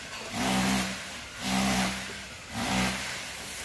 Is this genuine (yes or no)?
no